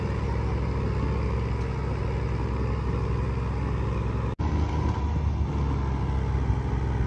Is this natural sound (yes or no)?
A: yes